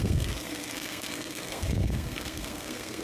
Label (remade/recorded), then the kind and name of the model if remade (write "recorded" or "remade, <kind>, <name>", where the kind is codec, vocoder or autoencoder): remade, codec, SNAC